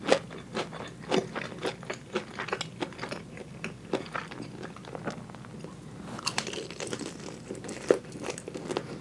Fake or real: real